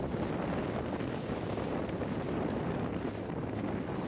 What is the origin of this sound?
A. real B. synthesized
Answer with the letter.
A